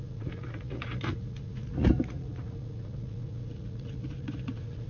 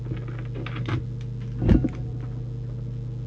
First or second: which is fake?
first